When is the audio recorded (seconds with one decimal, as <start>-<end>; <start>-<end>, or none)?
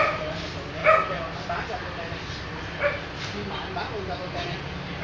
0.0-5.0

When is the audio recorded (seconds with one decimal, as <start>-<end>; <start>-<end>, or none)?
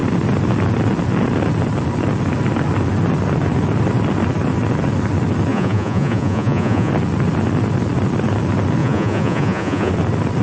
0.0-5.5; 6.9-8.8; 9.9-10.4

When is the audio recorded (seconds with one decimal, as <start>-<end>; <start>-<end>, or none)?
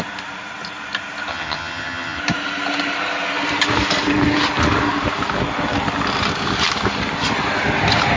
0.0-1.3; 2.2-8.2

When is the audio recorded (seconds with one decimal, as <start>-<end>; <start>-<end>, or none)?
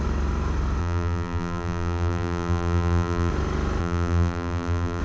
0.0-0.8; 3.3-3.8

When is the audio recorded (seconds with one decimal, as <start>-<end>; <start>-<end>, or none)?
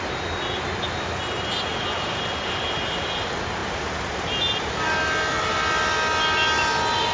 0.0-1.7; 3.1-7.1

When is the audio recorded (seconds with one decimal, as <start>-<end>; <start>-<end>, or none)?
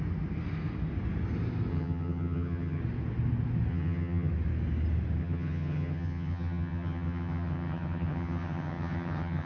0.0-1.7; 2.8-3.7; 4.3-5.2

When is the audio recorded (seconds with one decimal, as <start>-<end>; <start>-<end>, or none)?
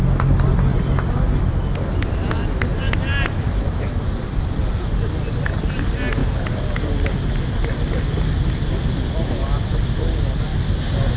0.0-11.2